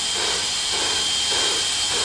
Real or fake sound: real